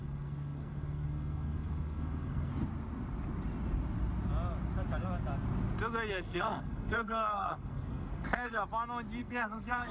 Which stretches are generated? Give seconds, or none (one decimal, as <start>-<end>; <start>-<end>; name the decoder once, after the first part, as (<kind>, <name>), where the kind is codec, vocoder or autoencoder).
0.0-2.5 (codec, SNAC); 6.1-8.6; 9.2-9.9